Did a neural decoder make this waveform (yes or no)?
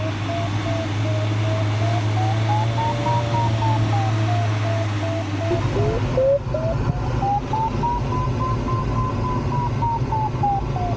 no